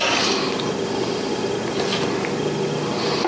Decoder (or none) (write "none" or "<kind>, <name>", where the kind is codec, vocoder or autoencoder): none